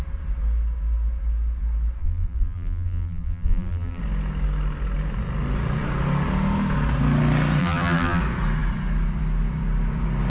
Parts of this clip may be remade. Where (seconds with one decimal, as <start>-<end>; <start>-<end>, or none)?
2.0-4.0; 7.6-8.2